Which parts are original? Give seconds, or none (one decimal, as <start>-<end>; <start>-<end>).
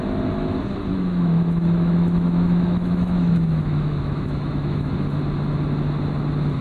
0.0-0.9; 4.9-6.6